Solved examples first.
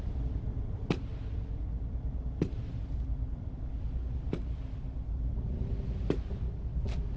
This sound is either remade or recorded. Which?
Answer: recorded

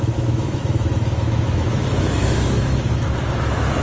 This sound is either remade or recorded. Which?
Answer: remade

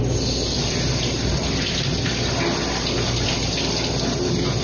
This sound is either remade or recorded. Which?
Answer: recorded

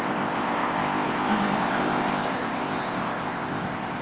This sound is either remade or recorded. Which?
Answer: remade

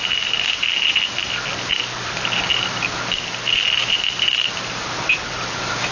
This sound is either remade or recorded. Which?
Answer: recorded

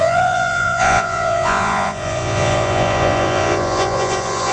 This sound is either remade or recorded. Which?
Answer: remade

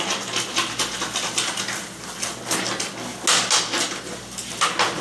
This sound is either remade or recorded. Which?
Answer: recorded